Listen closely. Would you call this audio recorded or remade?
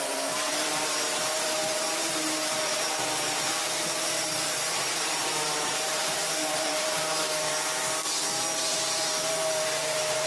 remade